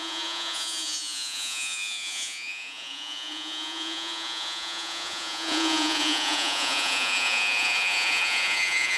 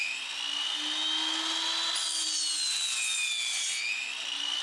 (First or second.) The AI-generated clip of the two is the first